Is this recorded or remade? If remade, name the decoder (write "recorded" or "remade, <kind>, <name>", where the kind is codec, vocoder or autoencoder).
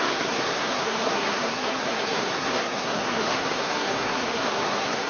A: remade, codec, SNAC